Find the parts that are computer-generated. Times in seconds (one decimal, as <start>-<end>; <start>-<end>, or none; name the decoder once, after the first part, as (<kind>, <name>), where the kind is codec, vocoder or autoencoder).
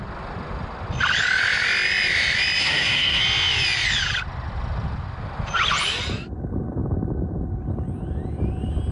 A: 2.6-3.2 (codec, SNAC)